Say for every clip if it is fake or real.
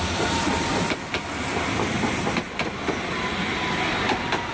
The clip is real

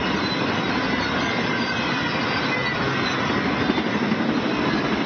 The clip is real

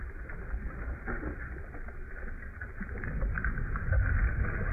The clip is real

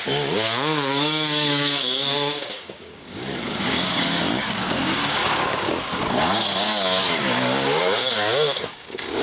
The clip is fake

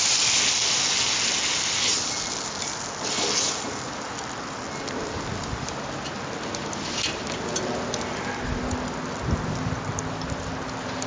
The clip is real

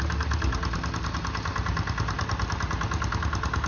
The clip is real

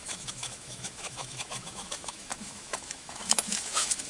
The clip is fake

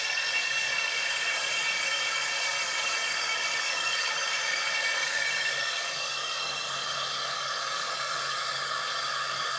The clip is fake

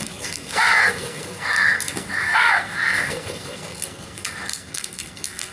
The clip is fake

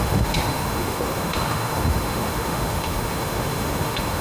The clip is fake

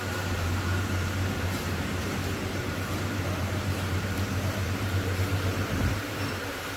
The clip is fake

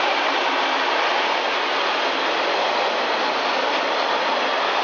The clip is real